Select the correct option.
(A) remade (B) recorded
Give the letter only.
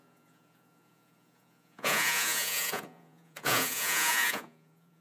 A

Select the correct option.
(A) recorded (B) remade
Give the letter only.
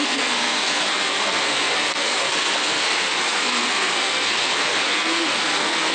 B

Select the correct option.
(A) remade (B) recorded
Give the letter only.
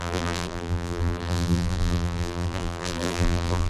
A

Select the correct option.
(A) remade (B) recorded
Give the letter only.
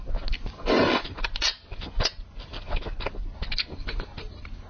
B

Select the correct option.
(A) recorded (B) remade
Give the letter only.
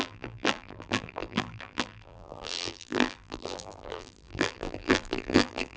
B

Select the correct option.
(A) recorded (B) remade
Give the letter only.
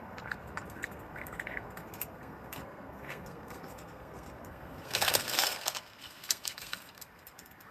B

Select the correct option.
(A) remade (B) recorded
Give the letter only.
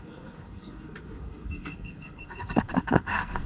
A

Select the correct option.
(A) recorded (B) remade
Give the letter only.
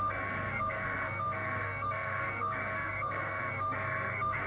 B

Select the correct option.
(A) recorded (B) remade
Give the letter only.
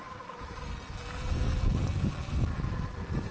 A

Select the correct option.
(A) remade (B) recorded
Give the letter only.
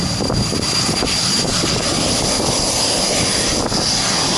B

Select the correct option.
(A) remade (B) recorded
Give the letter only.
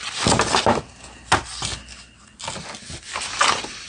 B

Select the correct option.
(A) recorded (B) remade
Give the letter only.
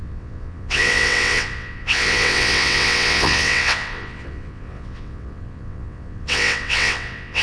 B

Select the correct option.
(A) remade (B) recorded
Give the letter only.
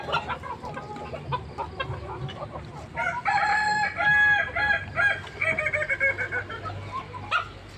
B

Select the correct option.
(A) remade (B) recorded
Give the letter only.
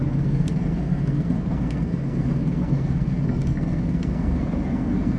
A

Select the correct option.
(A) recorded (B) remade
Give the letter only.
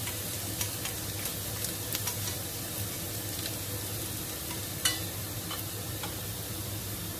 A